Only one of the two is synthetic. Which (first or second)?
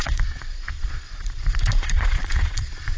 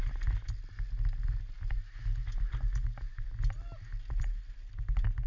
first